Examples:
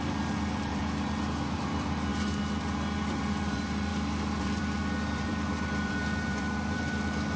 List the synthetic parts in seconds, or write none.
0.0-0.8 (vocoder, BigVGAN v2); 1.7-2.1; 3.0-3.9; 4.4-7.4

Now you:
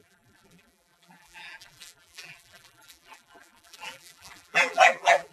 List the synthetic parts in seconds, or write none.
0.0-5.3 (vocoder, BigVGAN v2)

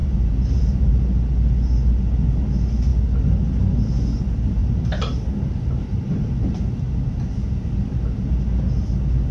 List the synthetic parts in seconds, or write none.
0.0-0.9 (vocoder, BigVGAN v2); 4.6-6.9

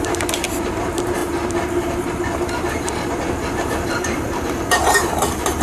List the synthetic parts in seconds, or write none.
0.0-5.6 (vocoder, BigVGAN v2)

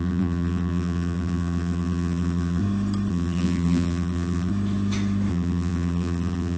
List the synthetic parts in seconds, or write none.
0.0-2.6 (vocoder, BigVGAN v2); 3.1-4.5; 5.3-6.6